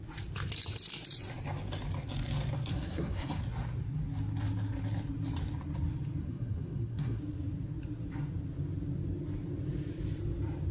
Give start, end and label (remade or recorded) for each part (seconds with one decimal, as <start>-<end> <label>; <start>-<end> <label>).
0.0-2.7 recorded; 2.7-3.4 remade; 3.4-6.2 recorded; 6.2-7.2 remade; 7.2-10.7 recorded